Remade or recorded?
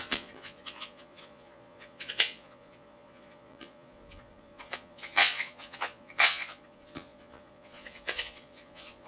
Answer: remade